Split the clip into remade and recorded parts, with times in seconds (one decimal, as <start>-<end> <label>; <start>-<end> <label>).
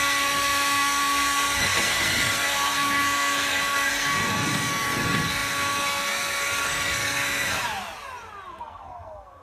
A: 0.0-7.6 remade; 7.6-8.5 recorded; 8.5-9.4 remade